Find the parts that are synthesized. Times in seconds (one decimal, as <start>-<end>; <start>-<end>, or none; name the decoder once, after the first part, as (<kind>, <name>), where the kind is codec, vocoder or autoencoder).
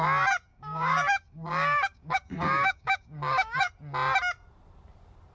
0.5-3.7 (codec, DAC)